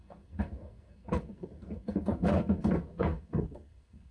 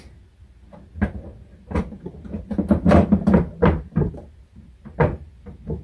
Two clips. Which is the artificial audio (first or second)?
first